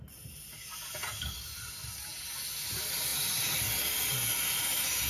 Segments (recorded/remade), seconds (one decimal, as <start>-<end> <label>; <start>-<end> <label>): 0.0-5.1 recorded